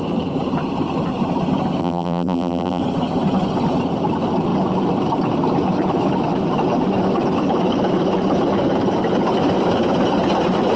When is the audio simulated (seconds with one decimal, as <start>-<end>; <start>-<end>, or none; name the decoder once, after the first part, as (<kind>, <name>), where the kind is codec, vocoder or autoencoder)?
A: 1.8-2.8 (vocoder, BigVGAN v2)